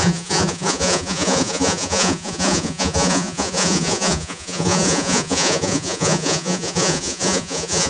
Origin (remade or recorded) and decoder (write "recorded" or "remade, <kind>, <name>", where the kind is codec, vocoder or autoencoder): remade, vocoder, Vocos